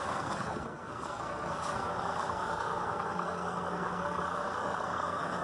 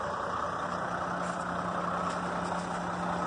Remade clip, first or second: first